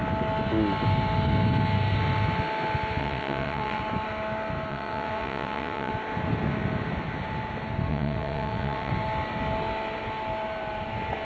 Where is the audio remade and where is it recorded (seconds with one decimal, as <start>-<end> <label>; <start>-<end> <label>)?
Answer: 0.0-3.0 recorded; 3.0-3.8 remade; 3.8-4.7 recorded; 4.7-5.9 remade; 5.9-7.9 recorded; 7.9-8.9 remade; 8.9-11.2 recorded